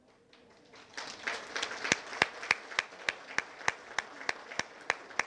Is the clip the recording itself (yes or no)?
yes